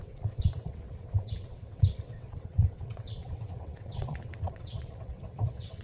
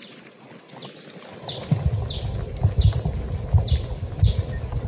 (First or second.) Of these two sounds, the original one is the second